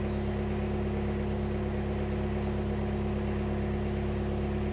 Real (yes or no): yes